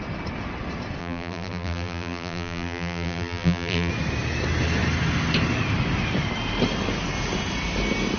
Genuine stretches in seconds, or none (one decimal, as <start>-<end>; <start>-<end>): 0.0-1.0; 3.9-8.2